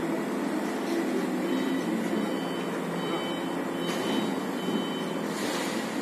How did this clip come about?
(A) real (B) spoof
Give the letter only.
A